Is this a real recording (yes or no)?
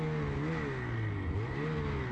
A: yes